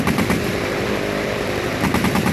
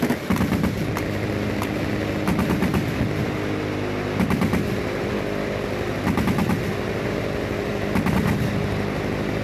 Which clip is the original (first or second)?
second